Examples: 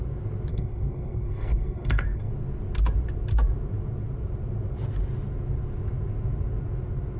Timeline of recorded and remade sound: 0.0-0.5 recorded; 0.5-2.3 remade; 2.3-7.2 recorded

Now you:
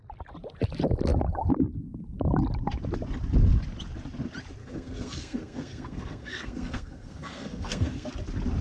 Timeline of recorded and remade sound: 0.0-4.6 recorded; 4.6-8.1 remade; 8.1-8.6 recorded

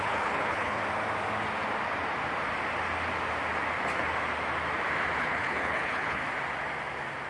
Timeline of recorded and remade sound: 0.0-0.8 remade; 0.8-5.2 recorded; 5.2-6.2 remade; 6.2-7.3 recorded